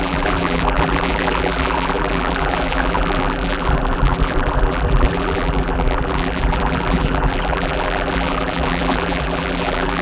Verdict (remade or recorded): remade